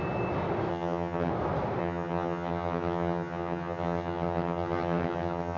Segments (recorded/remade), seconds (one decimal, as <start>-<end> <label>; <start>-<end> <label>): 0.0-0.7 recorded; 0.7-1.3 remade; 1.3-1.8 recorded; 1.8-5.6 remade